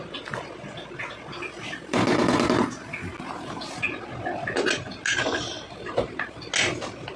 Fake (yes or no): no